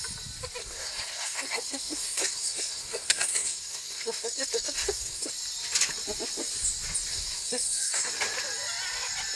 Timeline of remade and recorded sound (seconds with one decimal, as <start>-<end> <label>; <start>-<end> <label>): 0.0-0.6 recorded; 0.6-5.3 remade; 5.3-7.1 recorded; 7.1-8.1 remade; 8.1-9.4 recorded